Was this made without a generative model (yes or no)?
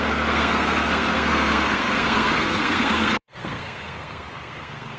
no